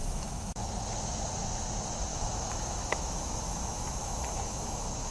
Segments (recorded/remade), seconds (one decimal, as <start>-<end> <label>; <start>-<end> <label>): 0.0-0.7 remade; 0.7-2.1 recorded; 2.1-5.1 remade